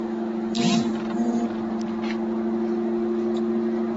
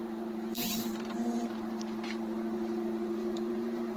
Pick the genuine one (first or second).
first